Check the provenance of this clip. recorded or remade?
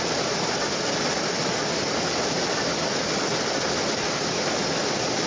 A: recorded